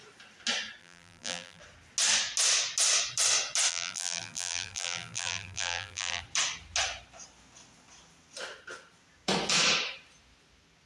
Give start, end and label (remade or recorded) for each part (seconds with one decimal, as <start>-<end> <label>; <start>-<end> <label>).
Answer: 0.0-0.8 recorded; 0.8-1.6 remade; 1.6-3.7 recorded; 3.7-6.2 remade; 6.2-10.9 recorded